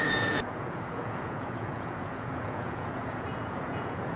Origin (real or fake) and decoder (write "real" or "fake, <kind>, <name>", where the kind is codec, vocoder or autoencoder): fake, vocoder, Vocos